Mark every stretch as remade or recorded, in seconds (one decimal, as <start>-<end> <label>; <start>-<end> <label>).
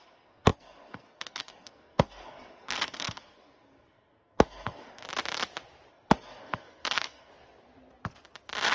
0.0-5.0 remade; 5.0-5.9 recorded; 5.9-7.3 remade; 7.3-8.7 recorded